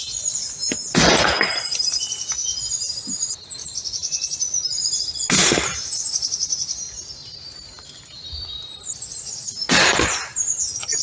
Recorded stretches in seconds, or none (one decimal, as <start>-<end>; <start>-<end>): 0.0-3.6; 4.4-11.0